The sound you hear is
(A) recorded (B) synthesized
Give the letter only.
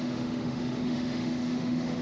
B